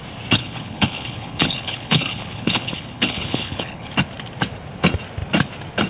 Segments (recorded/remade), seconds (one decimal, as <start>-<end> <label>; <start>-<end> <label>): 0.0-0.4 recorded; 0.4-3.9 remade; 3.9-5.9 recorded